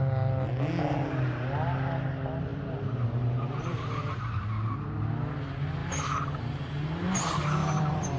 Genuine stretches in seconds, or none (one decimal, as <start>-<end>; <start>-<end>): 0.0-2.5; 4.2-7.6

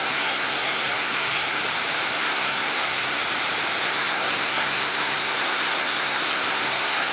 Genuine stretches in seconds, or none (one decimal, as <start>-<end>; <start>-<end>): 1.6-2.2; 3.2-3.8

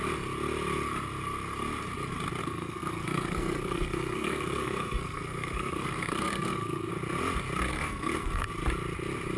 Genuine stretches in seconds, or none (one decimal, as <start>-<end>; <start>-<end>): 0.0-2.4; 6.9-7.7; 8.5-9.4

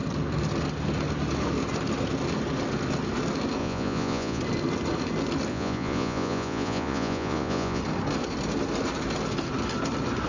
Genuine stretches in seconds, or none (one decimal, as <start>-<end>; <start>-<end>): 0.0-3.6; 4.4-5.5; 7.8-10.3

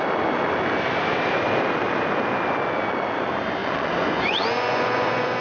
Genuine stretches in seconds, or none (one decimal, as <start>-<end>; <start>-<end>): 0.0-3.6

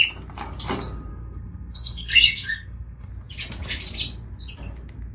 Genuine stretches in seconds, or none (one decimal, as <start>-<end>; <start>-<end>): 0.0-1.1; 3.1-5.1